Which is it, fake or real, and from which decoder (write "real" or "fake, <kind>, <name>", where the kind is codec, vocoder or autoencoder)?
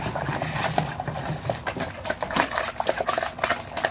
real